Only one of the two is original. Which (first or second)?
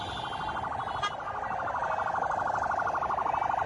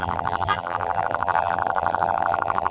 first